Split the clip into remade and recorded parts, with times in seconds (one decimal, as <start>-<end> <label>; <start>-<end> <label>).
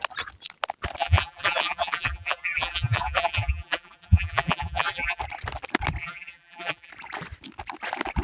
0.0-1.0 recorded; 1.0-5.2 remade; 5.2-6.0 recorded; 6.0-6.9 remade; 6.9-8.2 recorded